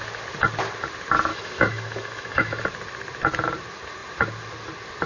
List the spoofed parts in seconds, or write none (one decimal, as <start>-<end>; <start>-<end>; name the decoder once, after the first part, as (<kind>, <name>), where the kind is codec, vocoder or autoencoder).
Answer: 1.3-2.6 (autoencoder, DAC-VAE)